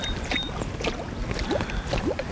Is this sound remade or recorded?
recorded